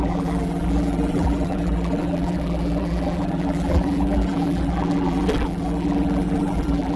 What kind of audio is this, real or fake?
fake